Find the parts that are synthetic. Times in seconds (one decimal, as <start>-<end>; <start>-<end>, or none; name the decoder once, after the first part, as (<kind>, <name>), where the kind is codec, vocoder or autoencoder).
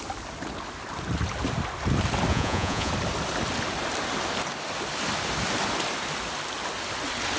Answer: 2.3-2.9 (vocoder, Vocos)